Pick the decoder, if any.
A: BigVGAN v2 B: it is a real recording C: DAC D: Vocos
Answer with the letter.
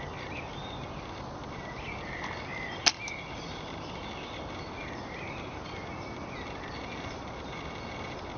B